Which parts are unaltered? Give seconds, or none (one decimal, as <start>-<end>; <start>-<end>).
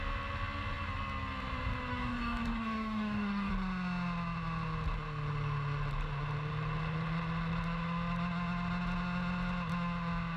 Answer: 0.0-1.9; 3.5-10.4